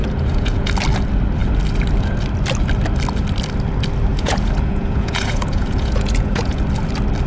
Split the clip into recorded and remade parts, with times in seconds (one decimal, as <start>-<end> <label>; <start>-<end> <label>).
0.0-0.7 remade; 0.7-4.1 recorded; 4.1-6.6 remade; 6.6-7.3 recorded